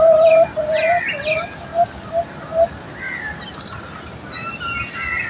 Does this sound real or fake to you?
real